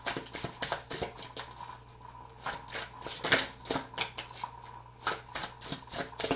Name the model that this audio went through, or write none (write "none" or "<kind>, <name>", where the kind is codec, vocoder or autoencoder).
none